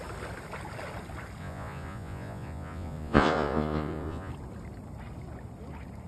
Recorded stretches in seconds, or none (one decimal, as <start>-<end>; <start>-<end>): 0.0-1.4; 4.3-6.1

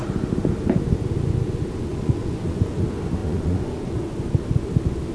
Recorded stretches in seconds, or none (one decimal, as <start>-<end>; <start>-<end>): 0.0-1.9; 2.8-3.2; 4.2-5.1

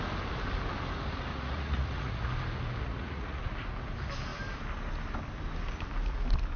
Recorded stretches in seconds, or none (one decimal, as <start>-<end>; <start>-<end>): 0.0-1.3; 2.3-2.8; 3.4-6.6

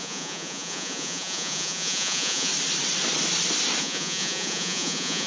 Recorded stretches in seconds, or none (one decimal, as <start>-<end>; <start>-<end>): 2.5-3.8

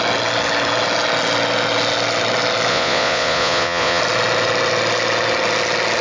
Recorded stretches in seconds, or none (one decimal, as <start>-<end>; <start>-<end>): 0.0-2.7; 4.0-6.0